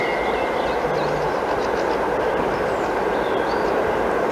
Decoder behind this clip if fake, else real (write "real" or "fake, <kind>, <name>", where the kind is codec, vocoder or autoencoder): real